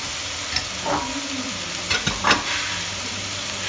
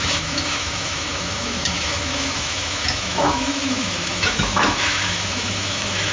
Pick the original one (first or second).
first